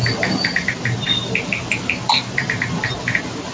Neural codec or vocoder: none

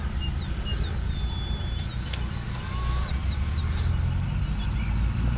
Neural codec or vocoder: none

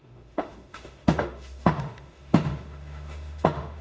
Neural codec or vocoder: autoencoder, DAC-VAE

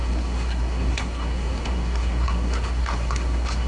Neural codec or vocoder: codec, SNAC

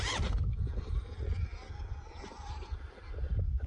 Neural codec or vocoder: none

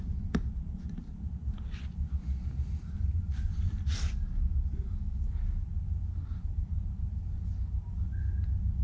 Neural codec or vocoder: none